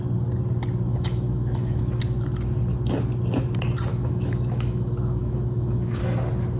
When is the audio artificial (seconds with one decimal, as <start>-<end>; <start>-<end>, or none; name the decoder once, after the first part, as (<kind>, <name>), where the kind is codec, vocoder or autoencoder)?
0.9-2.0 (autoencoder, DAC-VAE); 3.9-6.0